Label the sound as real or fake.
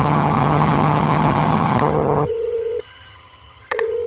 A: fake